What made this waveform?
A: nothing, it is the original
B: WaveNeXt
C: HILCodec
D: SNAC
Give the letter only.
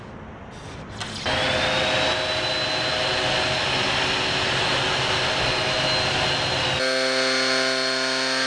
A